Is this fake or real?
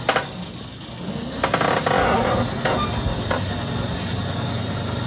real